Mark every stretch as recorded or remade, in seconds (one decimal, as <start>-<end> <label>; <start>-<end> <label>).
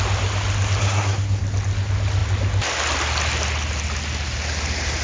0.0-0.8 recorded; 0.8-1.4 remade; 1.4-5.0 recorded